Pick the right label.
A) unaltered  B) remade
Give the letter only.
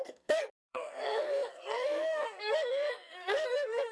B